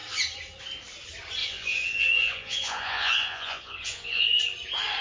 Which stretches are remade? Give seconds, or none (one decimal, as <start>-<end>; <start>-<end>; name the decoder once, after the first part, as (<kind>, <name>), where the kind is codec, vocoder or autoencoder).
1.4-4.4 (vocoder, Vocos)